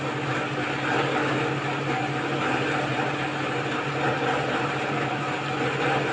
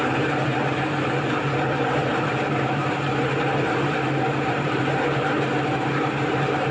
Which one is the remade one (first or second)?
second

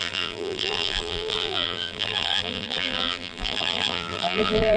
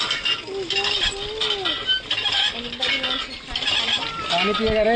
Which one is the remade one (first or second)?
first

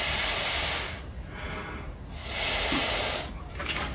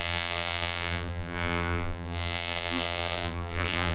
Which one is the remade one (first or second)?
second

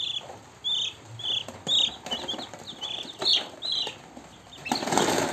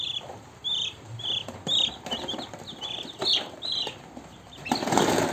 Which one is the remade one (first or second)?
second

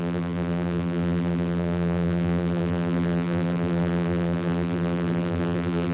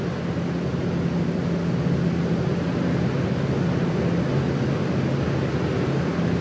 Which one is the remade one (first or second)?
first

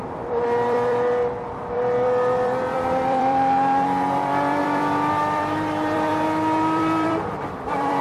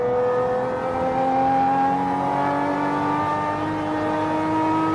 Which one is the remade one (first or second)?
first